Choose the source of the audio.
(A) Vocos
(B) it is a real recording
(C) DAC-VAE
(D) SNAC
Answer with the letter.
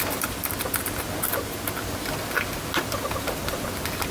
B